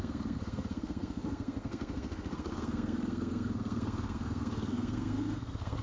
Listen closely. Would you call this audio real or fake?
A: fake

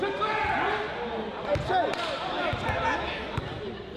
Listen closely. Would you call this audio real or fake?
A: real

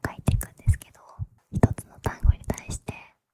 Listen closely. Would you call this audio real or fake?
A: fake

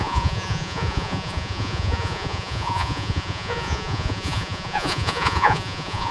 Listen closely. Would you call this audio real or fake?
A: fake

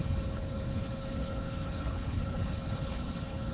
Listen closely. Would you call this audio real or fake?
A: fake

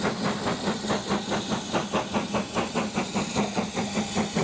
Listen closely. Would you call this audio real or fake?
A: real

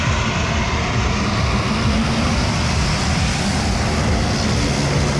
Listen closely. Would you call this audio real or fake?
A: real